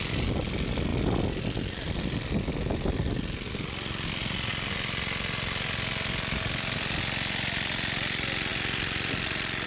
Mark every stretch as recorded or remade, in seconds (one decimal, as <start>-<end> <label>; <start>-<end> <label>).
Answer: 0.0-9.7 recorded